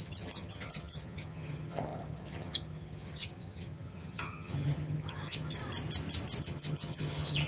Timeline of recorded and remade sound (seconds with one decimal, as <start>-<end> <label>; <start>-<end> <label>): 0.0-5.6 remade; 5.6-6.4 recorded; 6.4-7.5 remade